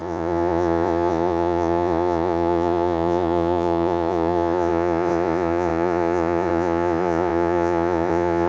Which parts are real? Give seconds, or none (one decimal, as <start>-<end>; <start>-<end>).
none